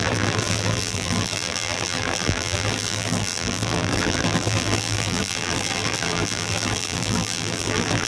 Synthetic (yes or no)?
yes